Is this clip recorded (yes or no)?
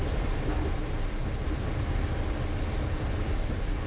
yes